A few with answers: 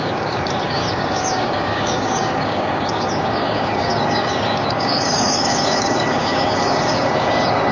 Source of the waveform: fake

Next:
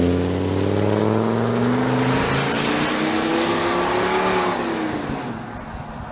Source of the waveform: real